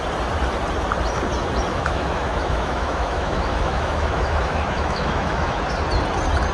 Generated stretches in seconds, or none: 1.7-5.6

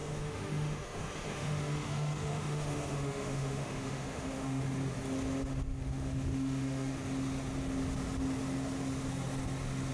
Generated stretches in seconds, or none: 0.0-4.6; 5.8-7.0

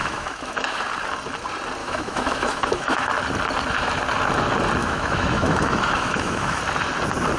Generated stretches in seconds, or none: 0.0-0.8; 1.8-3.1; 4.8-6.6